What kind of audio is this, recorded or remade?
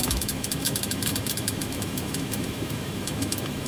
remade